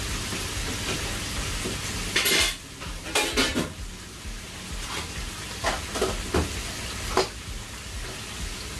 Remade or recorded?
recorded